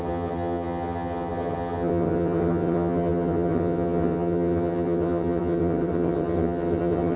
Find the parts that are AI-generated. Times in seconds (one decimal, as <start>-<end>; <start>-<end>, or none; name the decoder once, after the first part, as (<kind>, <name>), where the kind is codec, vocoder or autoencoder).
0.0-7.2 (vocoder, HiFi-GAN)